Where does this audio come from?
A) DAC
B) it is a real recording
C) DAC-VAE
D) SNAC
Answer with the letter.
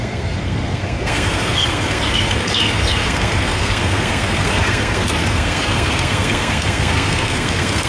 D